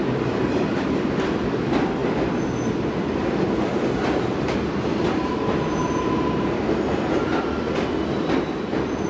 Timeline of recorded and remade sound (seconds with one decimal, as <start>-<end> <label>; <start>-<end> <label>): 0.0-9.1 recorded